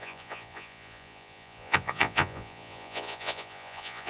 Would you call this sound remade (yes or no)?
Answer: yes